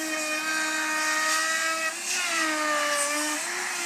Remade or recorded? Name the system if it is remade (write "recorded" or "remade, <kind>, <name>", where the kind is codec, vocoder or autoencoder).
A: recorded